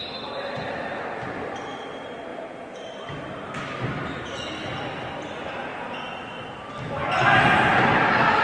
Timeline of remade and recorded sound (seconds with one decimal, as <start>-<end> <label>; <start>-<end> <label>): 0.0-2.3 recorded; 2.3-2.8 remade; 2.8-5.7 recorded; 5.7-6.2 remade; 6.2-8.4 recorded